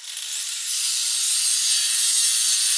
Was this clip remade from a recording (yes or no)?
no